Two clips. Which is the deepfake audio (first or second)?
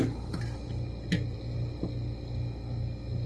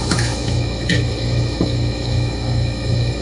second